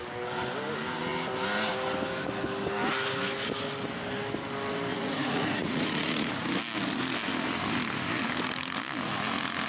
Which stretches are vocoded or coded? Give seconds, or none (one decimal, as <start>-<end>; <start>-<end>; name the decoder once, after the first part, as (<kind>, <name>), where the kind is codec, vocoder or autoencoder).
4.9-6.3 (vocoder, Vocos)